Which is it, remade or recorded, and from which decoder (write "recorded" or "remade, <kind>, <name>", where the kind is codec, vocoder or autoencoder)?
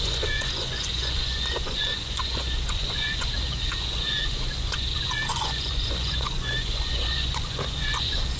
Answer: remade, vocoder, Vocos